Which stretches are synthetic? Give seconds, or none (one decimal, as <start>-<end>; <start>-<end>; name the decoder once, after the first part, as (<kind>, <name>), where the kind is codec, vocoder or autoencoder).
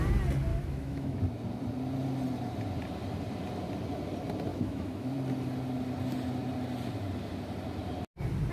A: 0.5-1.2 (autoencoder, DAC-VAE); 4.5-5.1